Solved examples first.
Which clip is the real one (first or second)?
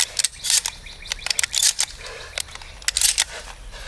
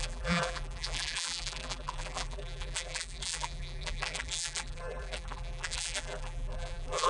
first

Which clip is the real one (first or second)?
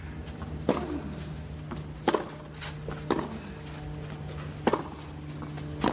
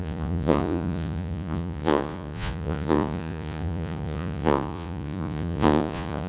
first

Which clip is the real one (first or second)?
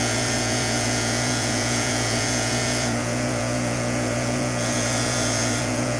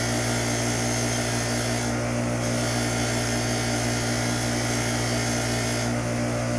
second